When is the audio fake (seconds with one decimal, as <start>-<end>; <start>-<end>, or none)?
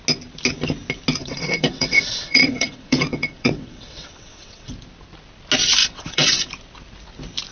1.2-4.7; 5.8-6.5